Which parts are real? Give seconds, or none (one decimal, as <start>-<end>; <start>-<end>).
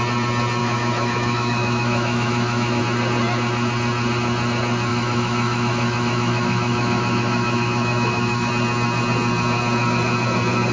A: 0.0-0.6; 2.8-4.9; 8.5-10.7